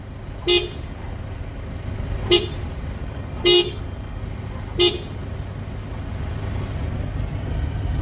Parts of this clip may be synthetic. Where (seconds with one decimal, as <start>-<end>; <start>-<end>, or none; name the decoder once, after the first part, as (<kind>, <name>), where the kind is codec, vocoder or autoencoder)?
3.0-4.2 (codec, DAC)